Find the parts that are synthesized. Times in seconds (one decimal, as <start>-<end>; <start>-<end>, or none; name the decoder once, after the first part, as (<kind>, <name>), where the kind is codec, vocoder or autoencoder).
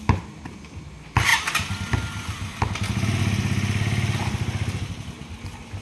none